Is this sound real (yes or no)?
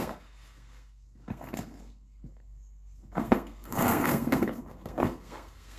no